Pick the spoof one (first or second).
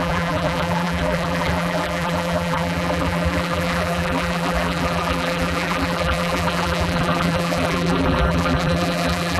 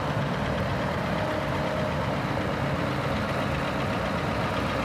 first